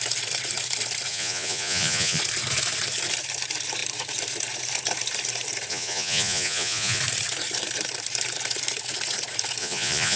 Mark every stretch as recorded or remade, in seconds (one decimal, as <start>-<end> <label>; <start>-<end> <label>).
0.0-1.1 recorded; 1.1-2.2 remade; 2.2-5.7 recorded; 5.7-7.0 remade; 7.0-9.6 recorded; 9.6-10.2 remade